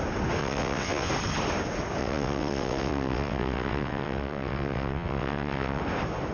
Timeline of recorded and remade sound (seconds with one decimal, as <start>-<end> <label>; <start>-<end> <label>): 0.0-0.4 recorded; 0.4-1.1 remade; 1.1-2.0 recorded; 2.0-5.8 remade; 5.8-6.3 recorded

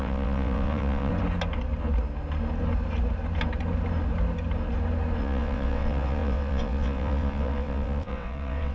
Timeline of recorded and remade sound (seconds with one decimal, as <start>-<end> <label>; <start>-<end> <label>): 0.0-1.1 remade; 1.1-5.2 recorded; 5.2-8.7 remade

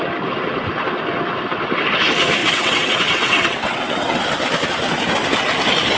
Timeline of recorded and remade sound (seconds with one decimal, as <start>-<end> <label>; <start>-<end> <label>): 0.0-2.4 recorded; 2.4-4.2 remade; 4.2-6.0 recorded